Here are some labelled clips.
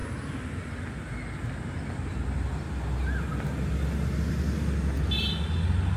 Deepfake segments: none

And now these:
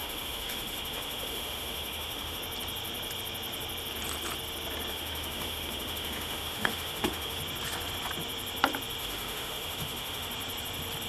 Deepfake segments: 0.0-2.4 (autoencoder, DAC-VAE); 4.9-7.4; 9.0-10.3

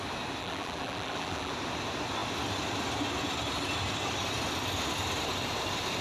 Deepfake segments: 0.4-1.5 (vocoder, BigVGAN v2)

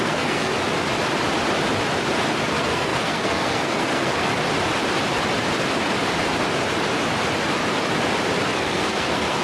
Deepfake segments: 0.0-0.5 (codec, SNAC); 2.5-4.3; 8.5-9.4

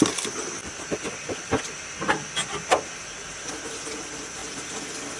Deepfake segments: 0.6-3.7 (vocoder, BigVGAN v2)

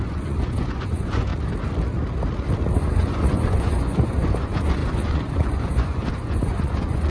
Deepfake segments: 0.0-1.3 (vocoder, Vocos); 2.8-7.1

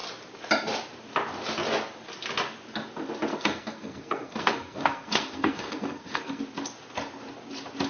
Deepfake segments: 3.3-6.4 (codec, SNAC)